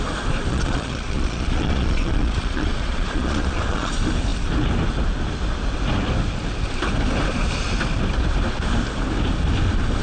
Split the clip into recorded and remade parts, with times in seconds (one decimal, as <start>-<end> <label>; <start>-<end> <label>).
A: 0.0-0.5 recorded; 0.5-3.9 remade; 3.9-10.0 recorded